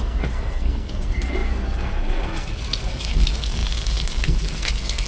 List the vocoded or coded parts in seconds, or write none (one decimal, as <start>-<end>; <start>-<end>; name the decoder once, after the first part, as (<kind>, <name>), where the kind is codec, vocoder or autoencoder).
0.0-5.1 (codec, SNAC)